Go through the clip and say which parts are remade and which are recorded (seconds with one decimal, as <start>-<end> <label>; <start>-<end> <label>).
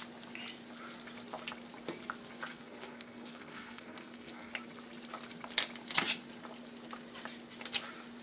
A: 0.0-2.5 recorded; 2.5-4.5 remade; 4.5-8.2 recorded